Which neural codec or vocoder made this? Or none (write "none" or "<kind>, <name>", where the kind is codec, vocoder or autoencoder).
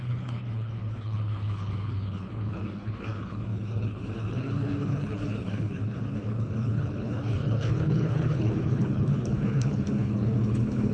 codec, HILCodec